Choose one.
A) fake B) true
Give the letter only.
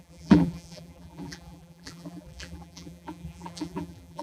A